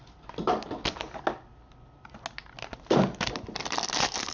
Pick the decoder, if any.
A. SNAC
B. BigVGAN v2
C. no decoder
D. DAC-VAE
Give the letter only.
C